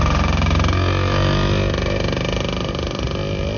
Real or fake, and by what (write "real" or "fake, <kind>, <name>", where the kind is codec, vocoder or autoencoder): real